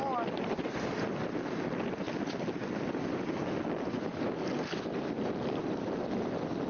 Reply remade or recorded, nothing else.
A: recorded